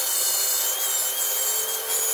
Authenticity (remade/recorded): remade